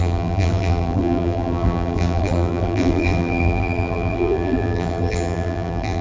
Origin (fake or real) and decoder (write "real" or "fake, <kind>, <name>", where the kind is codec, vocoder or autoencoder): fake, vocoder, BigVGAN v2